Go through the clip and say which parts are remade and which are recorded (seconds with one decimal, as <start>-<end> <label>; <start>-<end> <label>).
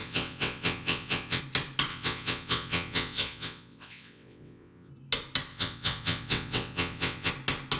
0.0-1.4 remade; 1.4-1.9 recorded; 1.9-4.9 remade; 4.9-5.5 recorded; 5.5-7.3 remade; 7.3-7.8 recorded